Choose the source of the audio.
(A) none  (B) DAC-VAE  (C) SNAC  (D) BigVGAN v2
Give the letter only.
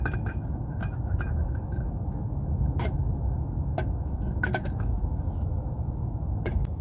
B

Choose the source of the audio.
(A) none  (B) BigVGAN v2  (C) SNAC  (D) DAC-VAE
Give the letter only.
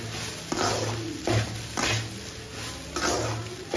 A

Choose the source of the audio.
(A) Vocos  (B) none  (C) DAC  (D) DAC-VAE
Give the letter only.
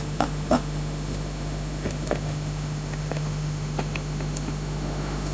D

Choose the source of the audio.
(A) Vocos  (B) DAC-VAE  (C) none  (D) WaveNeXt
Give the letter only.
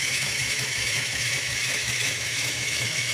B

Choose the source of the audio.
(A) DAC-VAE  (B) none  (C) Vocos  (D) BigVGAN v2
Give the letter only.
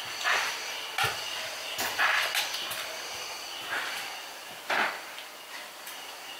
B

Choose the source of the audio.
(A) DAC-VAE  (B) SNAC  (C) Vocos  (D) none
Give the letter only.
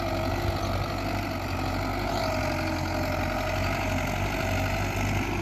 D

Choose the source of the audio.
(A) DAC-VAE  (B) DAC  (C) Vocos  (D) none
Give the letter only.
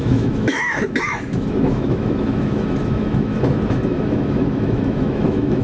A